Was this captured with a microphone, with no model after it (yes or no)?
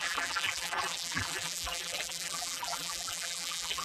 no